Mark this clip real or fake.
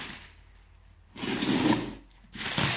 real